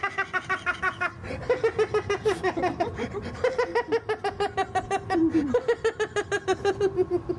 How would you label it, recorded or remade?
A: recorded